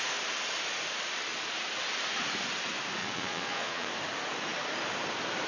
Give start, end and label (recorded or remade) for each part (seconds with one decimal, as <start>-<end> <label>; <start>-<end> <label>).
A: 0.0-3.0 recorded; 3.0-3.9 remade; 3.9-5.5 recorded